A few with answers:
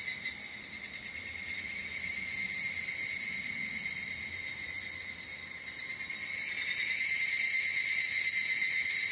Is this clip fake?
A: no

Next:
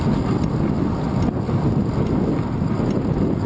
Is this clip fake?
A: no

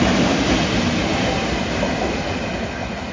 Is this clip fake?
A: no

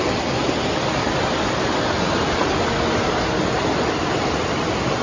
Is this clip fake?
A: no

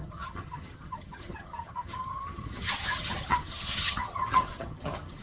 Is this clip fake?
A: yes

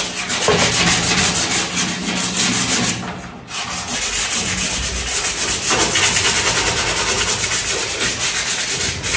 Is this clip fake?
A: no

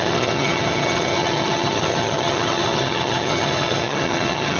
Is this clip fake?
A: yes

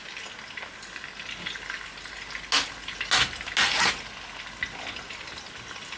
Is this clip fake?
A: no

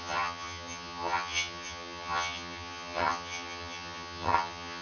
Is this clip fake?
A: yes